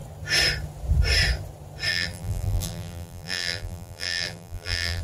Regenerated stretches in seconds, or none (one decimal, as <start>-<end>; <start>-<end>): 1.9-5.0